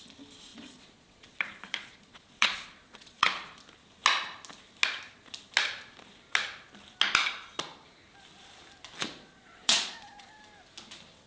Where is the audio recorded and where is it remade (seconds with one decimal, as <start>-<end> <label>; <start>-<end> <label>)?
0.0-0.5 recorded; 0.5-3.6 remade; 3.6-9.0 recorded; 9.0-10.4 remade; 10.4-11.3 recorded

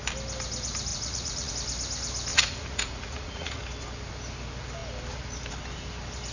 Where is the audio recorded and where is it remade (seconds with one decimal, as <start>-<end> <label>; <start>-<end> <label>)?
0.0-0.9 recorded; 0.9-1.5 remade; 1.5-2.3 recorded; 2.3-3.6 remade; 3.6-6.3 recorded

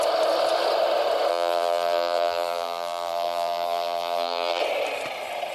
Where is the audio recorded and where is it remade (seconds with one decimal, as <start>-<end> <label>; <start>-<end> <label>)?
0.0-1.3 recorded; 1.3-4.6 remade; 4.6-5.5 recorded

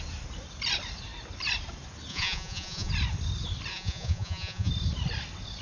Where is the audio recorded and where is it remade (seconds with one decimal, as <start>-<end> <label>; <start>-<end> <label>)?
0.0-2.1 recorded; 2.1-2.9 remade; 2.9-3.7 recorded; 3.7-4.7 remade; 4.7-5.6 recorded

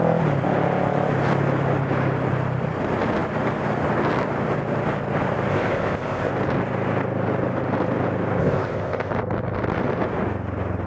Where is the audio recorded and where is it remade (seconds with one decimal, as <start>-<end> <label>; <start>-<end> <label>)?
0.0-5.5 recorded; 5.5-6.3 remade; 6.3-8.4 recorded; 8.4-9.1 remade; 9.1-10.9 recorded

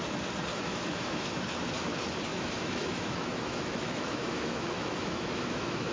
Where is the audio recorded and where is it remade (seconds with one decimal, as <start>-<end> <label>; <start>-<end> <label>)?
0.0-0.5 recorded; 0.5-1.3 remade; 1.3-2.3 recorded; 2.3-5.9 remade

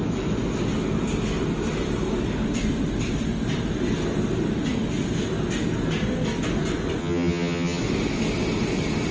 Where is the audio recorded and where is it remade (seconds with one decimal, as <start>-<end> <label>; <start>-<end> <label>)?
0.0-7.0 recorded; 7.0-7.8 remade; 7.8-9.1 recorded

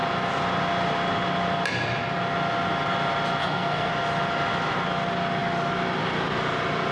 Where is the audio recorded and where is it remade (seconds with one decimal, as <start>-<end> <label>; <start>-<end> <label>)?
0.0-3.4 recorded; 3.4-3.9 remade; 3.9-6.9 recorded